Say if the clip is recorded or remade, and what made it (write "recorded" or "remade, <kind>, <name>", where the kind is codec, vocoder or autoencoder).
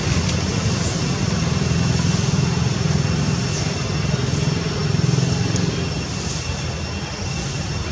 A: recorded